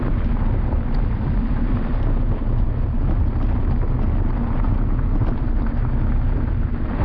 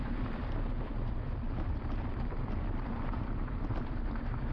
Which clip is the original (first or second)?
first